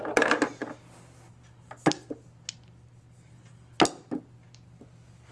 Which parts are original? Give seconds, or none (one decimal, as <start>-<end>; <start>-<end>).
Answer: 0.0-5.3